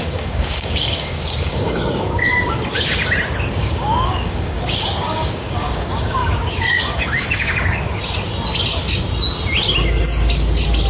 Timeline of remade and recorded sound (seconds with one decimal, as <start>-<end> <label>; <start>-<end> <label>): 0.0-3.0 remade; 3.0-3.5 recorded; 3.5-8.0 remade; 8.0-10.9 recorded